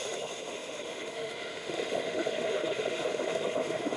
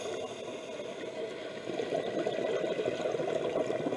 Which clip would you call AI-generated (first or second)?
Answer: first